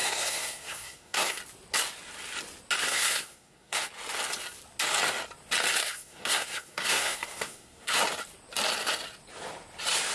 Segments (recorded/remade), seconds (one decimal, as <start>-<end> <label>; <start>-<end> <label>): 0.0-1.4 remade; 1.4-2.8 recorded; 2.8-3.9 remade; 3.9-5.8 recorded; 5.8-8.0 remade; 8.0-10.1 recorded